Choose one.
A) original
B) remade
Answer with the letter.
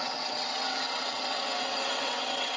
B